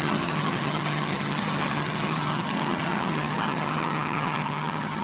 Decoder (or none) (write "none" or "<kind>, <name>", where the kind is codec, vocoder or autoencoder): vocoder, HiFi-GAN